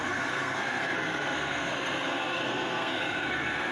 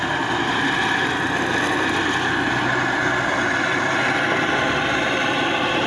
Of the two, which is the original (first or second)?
second